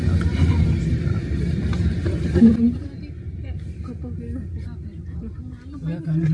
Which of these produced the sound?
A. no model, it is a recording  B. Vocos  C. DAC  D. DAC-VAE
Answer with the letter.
A